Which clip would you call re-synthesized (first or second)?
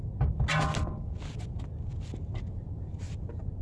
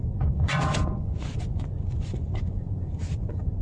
second